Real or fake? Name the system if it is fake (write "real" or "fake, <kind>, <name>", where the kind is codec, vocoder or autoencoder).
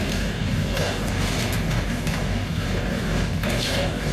fake, codec, DAC